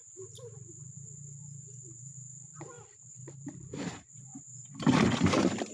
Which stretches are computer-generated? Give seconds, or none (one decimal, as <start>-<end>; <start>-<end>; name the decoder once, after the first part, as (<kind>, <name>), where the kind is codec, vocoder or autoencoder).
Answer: 1.4-4.3 (vocoder, BigVGAN v2)

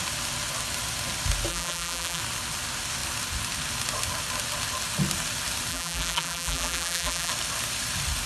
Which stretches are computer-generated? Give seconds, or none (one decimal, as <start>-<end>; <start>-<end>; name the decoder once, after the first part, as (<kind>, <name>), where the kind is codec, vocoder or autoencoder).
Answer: 1.5-2.2 (vocoder, BigVGAN v2); 5.7-7.3

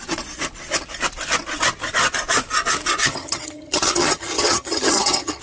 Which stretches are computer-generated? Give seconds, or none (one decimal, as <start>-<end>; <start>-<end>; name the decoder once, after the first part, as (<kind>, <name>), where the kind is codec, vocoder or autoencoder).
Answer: 3.0-5.4 (vocoder, HiFi-GAN)

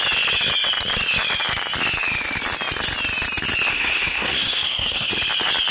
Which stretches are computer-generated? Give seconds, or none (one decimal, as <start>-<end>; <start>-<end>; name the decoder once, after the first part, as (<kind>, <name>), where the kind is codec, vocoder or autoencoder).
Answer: 3.7-5.1 (codec, SNAC)

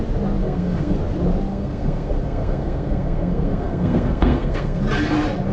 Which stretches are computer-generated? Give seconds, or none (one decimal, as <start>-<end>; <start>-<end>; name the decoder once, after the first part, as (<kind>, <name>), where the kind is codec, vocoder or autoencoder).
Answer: 0.4-1.0 (codec, SNAC); 1.5-4.8

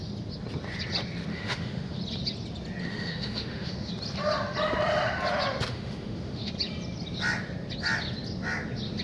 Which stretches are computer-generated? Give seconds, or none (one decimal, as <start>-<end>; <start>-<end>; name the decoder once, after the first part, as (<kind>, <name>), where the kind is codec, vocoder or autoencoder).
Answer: 1.3-2.0 (autoencoder, DAC-VAE); 2.8-3.9; 5.7-6.5

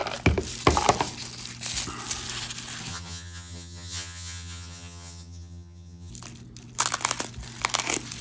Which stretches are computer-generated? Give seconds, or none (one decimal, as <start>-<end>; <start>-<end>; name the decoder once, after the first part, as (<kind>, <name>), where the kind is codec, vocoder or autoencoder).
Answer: 2.9-6.1 (vocoder, HiFi-GAN)

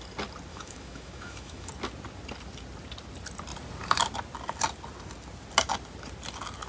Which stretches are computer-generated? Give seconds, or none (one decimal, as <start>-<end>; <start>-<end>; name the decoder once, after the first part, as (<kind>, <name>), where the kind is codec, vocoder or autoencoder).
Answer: 0.5-1.7 (autoencoder, DAC-VAE)